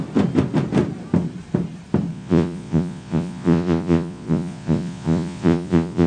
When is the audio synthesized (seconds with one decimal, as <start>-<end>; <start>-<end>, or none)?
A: 2.1-6.1